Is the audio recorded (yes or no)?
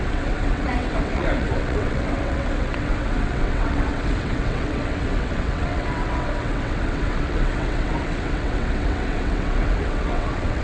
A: no